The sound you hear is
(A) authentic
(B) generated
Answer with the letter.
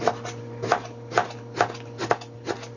A